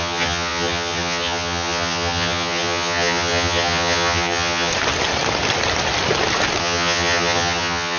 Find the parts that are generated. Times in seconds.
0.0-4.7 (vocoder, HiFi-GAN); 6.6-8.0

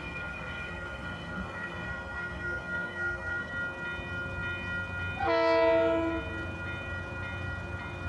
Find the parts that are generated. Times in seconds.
0.0-3.5 (codec, SNAC)

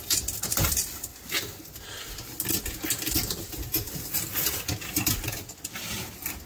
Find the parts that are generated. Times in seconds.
none

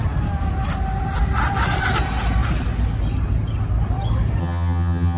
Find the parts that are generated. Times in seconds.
4.4-5.2 (vocoder, HiFi-GAN)

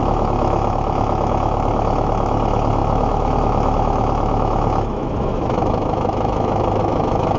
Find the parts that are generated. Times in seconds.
0.0-7.4 (autoencoder, DAC-VAE)

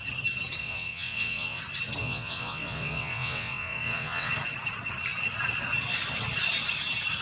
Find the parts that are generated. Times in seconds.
0.6-1.6 (vocoder, WaveNeXt); 2.0-4.3

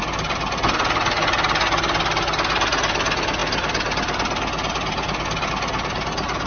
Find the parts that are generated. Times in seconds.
none